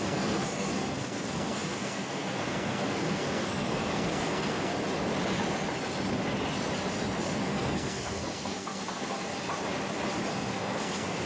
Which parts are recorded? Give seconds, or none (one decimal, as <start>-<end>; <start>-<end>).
4.7-7.2; 9.3-10.3